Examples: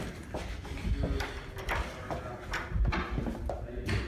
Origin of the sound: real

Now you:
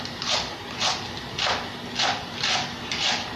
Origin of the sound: real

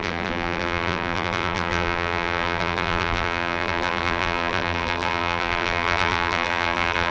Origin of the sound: fake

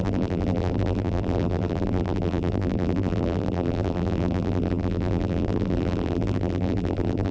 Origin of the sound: fake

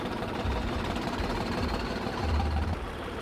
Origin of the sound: fake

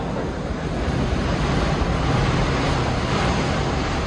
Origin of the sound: real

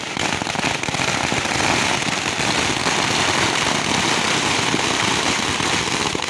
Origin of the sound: real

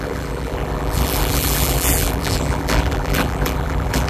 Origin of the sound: fake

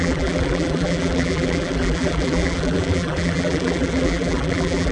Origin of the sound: fake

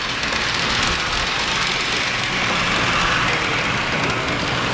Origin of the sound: real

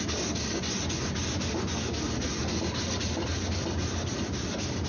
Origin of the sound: real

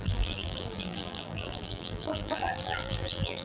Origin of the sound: fake